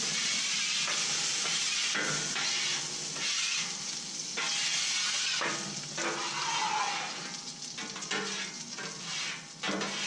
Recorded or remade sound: recorded